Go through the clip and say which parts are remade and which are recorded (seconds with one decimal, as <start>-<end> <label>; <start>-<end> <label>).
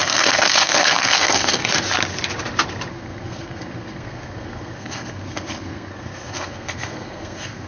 0.0-1.6 remade; 1.6-2.9 recorded; 2.9-7.7 remade